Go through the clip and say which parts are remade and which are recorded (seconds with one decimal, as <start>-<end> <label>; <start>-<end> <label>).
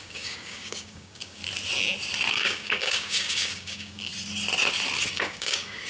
0.0-1.4 remade; 1.4-2.3 recorded; 2.3-4.1 remade; 4.1-5.1 recorded; 5.1-5.9 remade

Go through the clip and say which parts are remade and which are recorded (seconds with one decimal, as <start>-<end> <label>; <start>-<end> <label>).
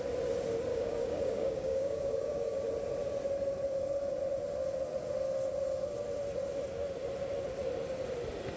0.0-0.7 recorded; 0.7-2.6 remade; 2.6-8.6 recorded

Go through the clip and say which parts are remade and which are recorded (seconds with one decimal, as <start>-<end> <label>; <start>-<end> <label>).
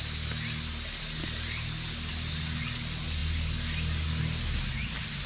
0.0-5.3 recorded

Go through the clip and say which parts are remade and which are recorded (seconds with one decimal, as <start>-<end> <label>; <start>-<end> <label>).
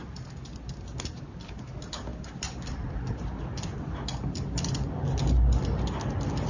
0.0-6.5 recorded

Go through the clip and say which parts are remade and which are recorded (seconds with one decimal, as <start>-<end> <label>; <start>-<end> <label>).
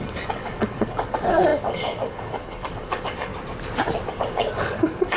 0.0-3.3 remade; 3.3-4.1 recorded; 4.1-5.2 remade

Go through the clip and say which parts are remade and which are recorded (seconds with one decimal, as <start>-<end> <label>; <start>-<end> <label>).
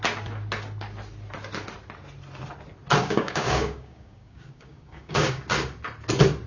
0.0-3.0 recorded; 3.0-5.4 remade; 5.4-6.5 recorded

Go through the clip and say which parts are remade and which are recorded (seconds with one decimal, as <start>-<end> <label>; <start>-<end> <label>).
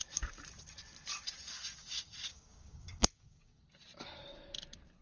0.0-2.3 recorded; 2.3-3.6 remade; 3.6-5.0 recorded